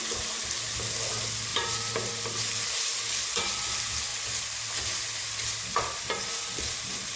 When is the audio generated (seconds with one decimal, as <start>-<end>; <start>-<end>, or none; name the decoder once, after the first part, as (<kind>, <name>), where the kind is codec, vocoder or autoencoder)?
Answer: 1.5-2.1 (vocoder, BigVGAN v2)